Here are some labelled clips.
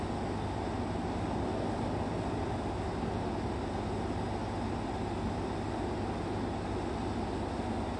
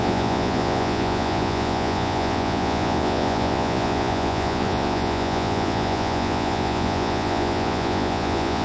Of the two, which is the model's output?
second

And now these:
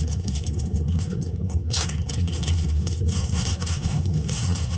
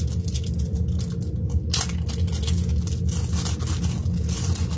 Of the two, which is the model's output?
first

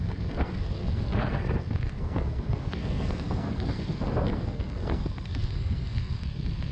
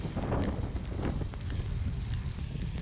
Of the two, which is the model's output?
first